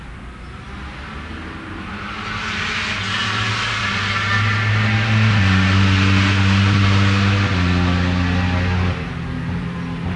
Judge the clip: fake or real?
real